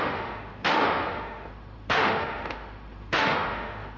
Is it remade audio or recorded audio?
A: remade